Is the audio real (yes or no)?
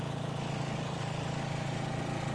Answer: yes